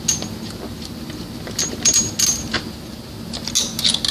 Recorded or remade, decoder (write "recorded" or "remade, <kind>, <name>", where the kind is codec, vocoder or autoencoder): recorded